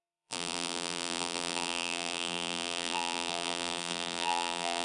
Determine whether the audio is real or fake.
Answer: fake